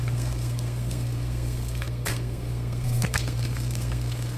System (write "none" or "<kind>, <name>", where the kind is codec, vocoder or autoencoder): codec, SNAC